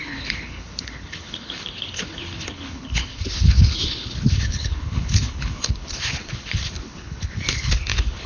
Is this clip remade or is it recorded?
remade